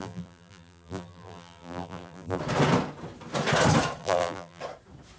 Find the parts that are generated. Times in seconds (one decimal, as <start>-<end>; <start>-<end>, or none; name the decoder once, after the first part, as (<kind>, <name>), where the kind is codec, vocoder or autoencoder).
0.0-2.4 (vocoder, BigVGAN v2); 4.0-4.6